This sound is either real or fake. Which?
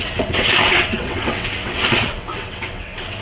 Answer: fake